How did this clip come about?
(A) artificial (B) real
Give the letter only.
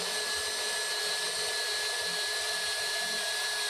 B